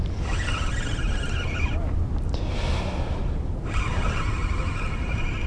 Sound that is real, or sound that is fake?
real